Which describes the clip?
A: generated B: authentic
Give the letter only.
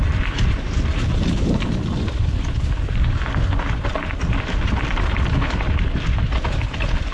B